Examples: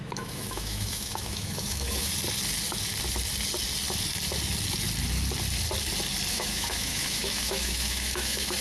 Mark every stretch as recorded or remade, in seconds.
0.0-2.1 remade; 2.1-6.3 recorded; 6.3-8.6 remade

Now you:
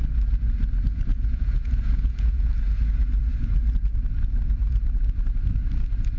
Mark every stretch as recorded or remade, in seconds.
0.0-1.1 recorded; 1.1-2.5 remade; 2.5-6.2 recorded

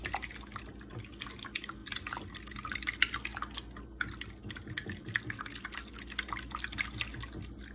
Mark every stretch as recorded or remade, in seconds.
0.0-7.7 recorded

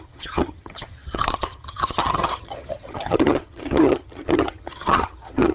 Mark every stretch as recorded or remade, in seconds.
0.0-5.5 remade

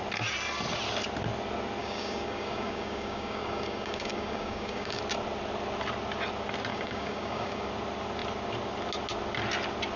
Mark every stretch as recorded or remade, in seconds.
0.0-1.8 recorded; 1.8-5.0 remade; 5.0-6.7 recorded; 6.7-7.7 remade; 7.7-10.0 recorded